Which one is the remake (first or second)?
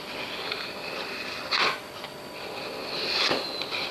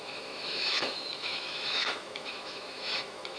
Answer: second